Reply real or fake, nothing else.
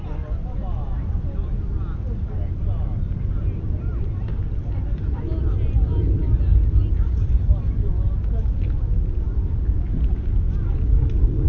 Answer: real